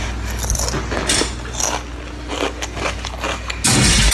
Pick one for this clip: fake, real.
real